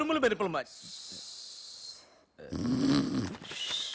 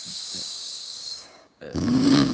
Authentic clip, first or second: first